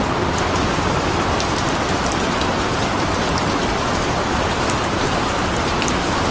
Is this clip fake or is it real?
real